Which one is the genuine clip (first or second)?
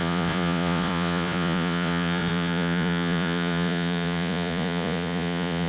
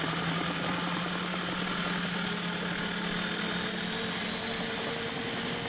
second